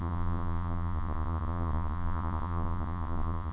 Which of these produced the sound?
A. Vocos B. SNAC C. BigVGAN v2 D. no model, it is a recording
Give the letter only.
A